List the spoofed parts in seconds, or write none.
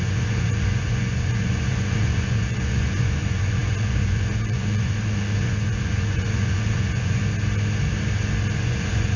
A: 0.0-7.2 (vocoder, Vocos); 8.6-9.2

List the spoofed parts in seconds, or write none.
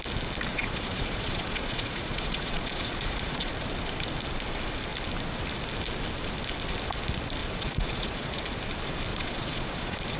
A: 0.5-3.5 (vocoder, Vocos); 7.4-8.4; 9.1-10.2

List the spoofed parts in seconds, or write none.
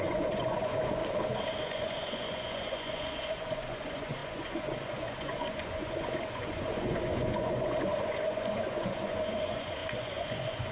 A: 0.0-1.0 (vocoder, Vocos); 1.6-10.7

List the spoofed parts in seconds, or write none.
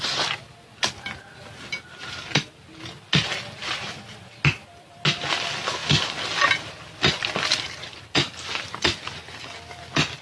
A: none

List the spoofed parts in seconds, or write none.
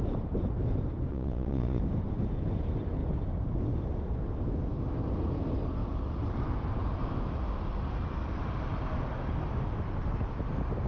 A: 1.1-1.8 (vocoder, Vocos)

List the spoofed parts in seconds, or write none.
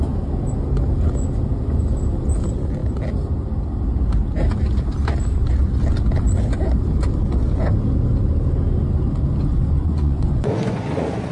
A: 9.5-11.3 (vocoder, Vocos)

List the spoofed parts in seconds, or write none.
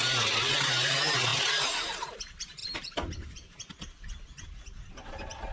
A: none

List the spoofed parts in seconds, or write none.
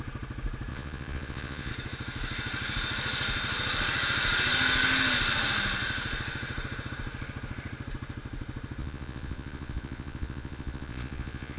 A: 0.7-1.7 (vocoder, Vocos); 8.8-11.6